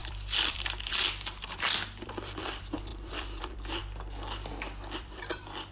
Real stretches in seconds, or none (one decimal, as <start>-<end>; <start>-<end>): 3.8-5.0